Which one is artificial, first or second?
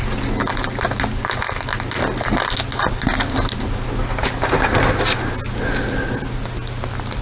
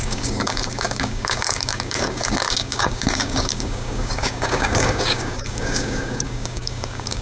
second